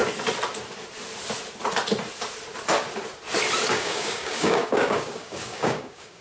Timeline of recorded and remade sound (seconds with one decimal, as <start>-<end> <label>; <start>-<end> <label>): 0.0-3.7 recorded; 3.7-6.2 remade